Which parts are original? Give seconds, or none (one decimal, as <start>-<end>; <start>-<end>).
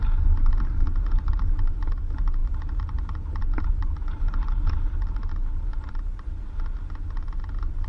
0.0-0.4; 1.8-2.4; 6.3-7.9